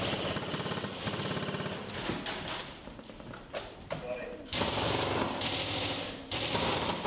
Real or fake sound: real